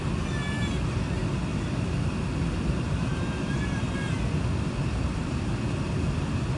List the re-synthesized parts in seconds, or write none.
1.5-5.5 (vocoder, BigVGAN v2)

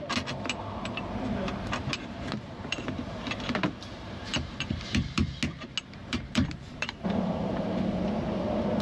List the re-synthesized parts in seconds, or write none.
1.8-5.2 (vocoder, BigVGAN v2); 6.0-8.0

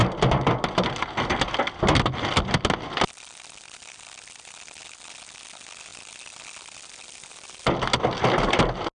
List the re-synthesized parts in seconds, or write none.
none

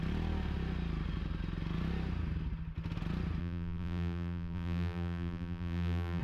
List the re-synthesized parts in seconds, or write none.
3.4-6.2 (vocoder, BigVGAN v2)

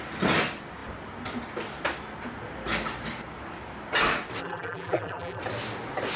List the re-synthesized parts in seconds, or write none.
4.4-5.4 (vocoder, BigVGAN v2)